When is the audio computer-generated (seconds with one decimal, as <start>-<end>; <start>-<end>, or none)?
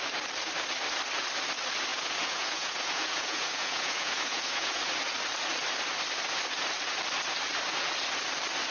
1.9-4.8